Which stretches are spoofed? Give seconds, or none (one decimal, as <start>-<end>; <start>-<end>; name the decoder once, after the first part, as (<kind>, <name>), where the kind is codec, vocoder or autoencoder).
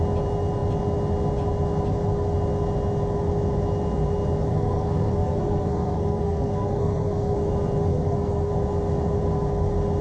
4.5-7.5 (codec, SNAC); 7.9-8.5